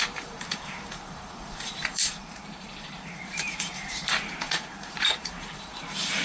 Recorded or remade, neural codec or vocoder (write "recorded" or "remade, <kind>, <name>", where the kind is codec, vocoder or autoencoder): remade, vocoder, BigVGAN v2